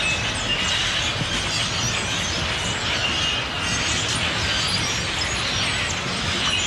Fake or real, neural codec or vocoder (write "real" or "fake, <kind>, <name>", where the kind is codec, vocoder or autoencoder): real